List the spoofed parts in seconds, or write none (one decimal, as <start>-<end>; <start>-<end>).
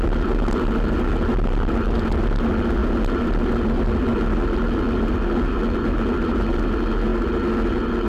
none